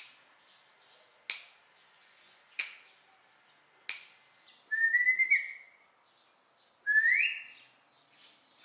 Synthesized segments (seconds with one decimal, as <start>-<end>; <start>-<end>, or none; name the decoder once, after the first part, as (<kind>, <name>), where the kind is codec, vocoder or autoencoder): 1.8-2.6 (vocoder, Vocos)